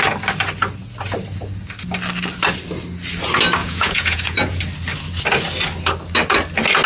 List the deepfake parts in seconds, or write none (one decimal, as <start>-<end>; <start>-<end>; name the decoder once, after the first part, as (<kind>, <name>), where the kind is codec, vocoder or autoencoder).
3.6-4.6 (vocoder, Vocos)